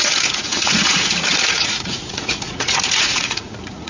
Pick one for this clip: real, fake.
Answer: fake